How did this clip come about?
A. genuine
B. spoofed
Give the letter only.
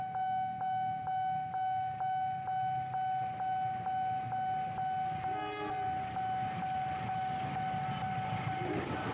A